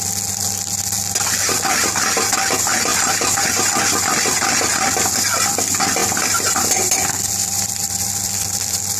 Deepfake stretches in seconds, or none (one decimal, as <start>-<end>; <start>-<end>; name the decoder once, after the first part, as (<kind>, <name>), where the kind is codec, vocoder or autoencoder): 6.0-6.6 (vocoder, BigVGAN v2); 7.4-9.0